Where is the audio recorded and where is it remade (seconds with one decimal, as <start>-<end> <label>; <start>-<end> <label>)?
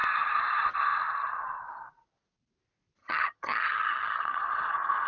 0.0-3.0 recorded; 3.0-4.4 remade; 4.4-5.1 recorded